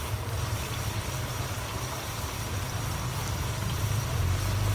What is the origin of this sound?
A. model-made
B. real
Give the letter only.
B